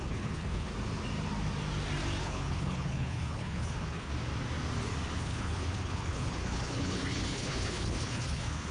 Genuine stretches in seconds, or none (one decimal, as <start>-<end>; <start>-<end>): 0.7-2.2; 4.1-5.2